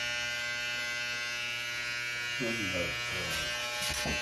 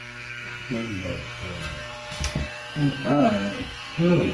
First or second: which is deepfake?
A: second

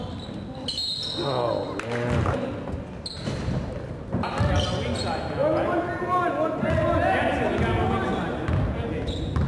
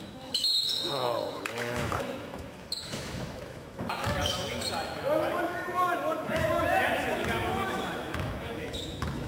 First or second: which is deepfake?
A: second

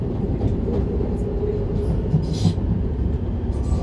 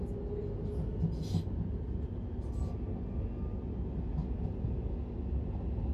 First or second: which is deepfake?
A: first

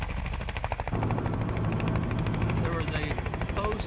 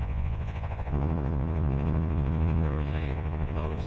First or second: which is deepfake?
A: second